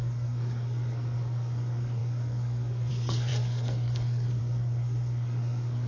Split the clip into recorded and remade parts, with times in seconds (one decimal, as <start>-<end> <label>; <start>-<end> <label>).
0.0-5.9 remade